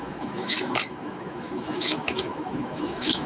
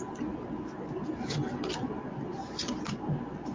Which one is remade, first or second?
first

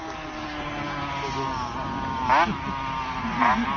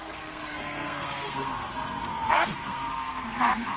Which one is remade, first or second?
second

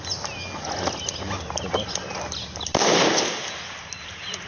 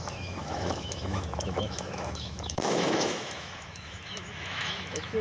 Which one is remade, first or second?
second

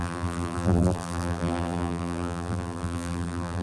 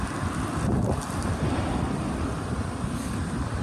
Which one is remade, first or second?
first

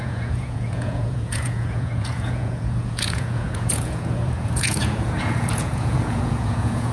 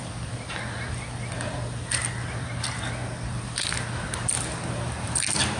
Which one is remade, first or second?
first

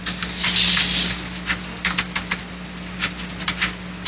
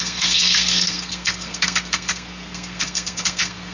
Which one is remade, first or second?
second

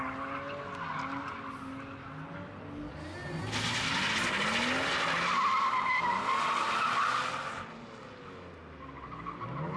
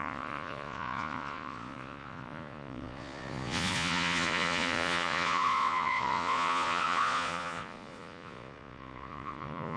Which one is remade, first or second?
second